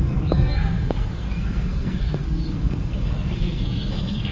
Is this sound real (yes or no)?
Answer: no